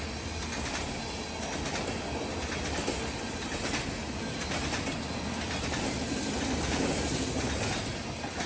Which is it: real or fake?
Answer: real